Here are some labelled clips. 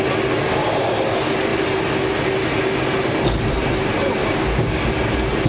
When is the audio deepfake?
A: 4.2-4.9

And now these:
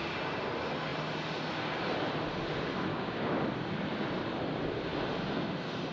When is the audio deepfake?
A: 2.9-3.4

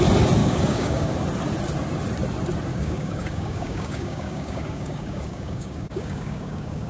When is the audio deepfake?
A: 0.4-1.1; 2.7-6.9

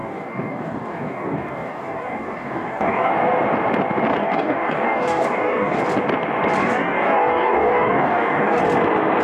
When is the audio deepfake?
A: 0.0-3.1; 4.1-5.8; 6.6-8.6

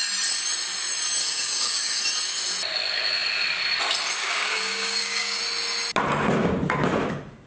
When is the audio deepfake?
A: 1.2-2.0; 4.2-5.4

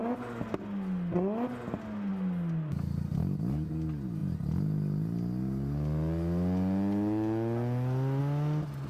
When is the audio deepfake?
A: none